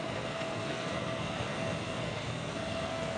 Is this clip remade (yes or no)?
yes